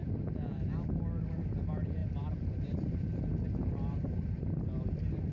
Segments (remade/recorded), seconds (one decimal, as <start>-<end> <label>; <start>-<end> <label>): 0.0-2.0 recorded; 2.0-4.8 remade; 4.8-5.3 recorded